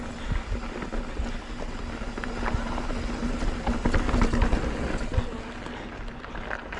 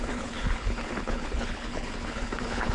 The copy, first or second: second